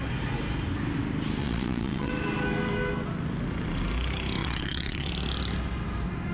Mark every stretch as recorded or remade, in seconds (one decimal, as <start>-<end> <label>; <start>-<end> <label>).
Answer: 0.0-1.4 recorded; 1.4-2.1 remade; 2.1-4.4 recorded; 4.4-5.1 remade; 5.1-6.3 recorded